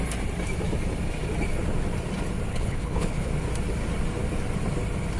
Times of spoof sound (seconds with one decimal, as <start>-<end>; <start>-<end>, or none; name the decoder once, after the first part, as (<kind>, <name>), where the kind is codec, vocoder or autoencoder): 2.5-3.3 (codec, HILCodec)